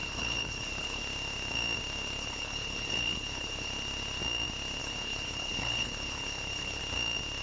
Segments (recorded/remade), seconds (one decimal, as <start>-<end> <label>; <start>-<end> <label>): 0.0-1.0 remade; 1.0-2.2 recorded; 2.2-3.7 remade; 3.7-4.8 recorded; 4.8-6.8 remade; 6.8-7.4 recorded